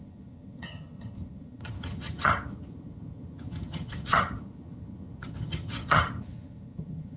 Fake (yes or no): yes